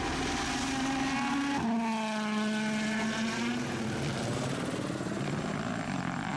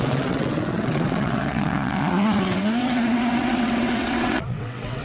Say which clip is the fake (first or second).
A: second